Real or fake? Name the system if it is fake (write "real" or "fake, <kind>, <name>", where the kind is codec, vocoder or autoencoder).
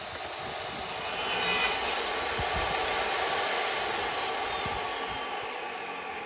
real